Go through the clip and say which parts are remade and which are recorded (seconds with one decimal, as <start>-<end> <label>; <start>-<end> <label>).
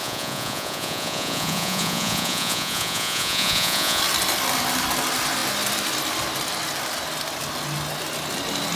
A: 0.0-4.0 remade; 4.0-8.8 recorded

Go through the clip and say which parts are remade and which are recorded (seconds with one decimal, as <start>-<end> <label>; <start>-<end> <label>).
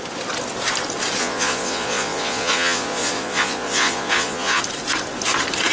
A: 0.0-1.2 recorded; 1.2-4.6 remade; 4.6-5.7 recorded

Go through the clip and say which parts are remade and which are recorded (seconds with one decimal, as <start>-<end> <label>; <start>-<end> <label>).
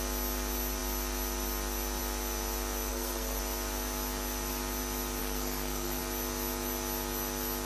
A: 0.0-2.9 recorded; 2.9-3.4 remade; 3.4-5.2 recorded; 5.2-6.0 remade; 6.0-7.7 recorded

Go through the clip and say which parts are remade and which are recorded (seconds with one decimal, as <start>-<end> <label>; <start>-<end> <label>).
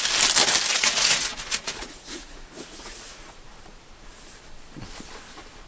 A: 0.0-0.7 recorded; 0.7-3.3 remade; 3.3-5.7 recorded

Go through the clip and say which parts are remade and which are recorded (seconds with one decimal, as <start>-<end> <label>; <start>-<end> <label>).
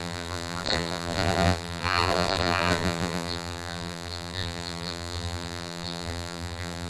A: 0.0-6.9 remade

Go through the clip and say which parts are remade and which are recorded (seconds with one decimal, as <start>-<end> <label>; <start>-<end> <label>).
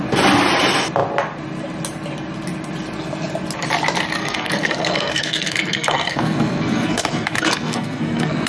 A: 0.0-4.2 recorded; 4.2-8.5 remade